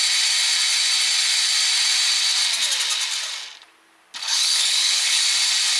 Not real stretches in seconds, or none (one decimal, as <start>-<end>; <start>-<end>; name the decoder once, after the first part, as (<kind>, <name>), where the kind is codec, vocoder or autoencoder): 4.2-5.2 (codec, HILCodec)